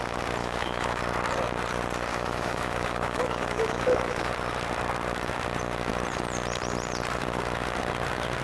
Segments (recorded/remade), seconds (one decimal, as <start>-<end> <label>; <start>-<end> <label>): 0.0-0.4 recorded; 0.4-1.0 remade; 1.0-2.1 recorded; 2.1-4.3 remade; 4.3-8.4 recorded